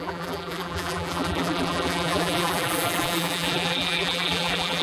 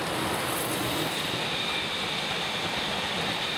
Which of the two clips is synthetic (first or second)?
first